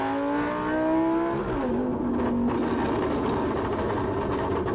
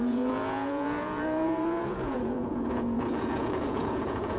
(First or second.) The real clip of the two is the first